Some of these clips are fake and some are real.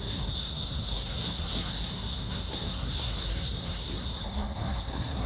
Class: fake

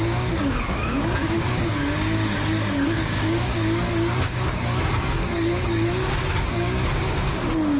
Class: fake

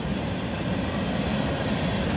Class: real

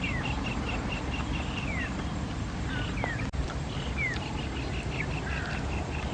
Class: real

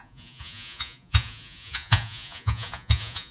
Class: fake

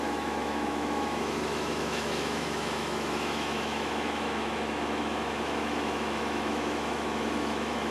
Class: fake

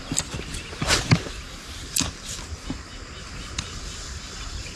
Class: real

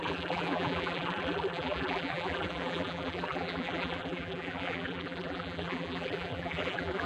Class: fake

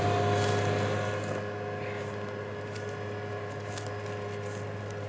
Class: real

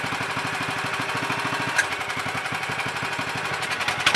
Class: real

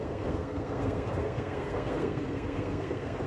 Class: fake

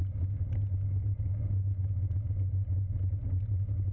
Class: real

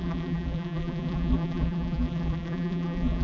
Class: fake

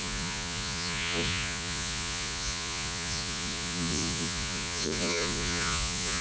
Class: fake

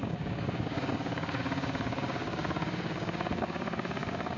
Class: fake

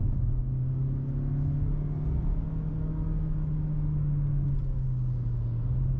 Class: real